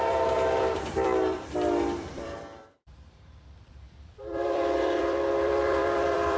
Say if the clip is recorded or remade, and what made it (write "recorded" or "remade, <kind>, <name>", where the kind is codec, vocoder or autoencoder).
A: remade, vocoder, BigVGAN v2